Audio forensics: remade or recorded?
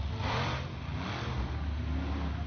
recorded